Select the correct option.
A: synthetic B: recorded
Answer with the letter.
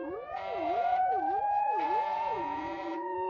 A